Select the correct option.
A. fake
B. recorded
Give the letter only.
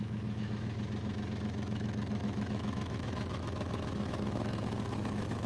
A